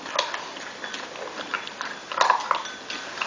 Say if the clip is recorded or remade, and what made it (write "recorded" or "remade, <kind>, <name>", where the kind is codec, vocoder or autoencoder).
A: recorded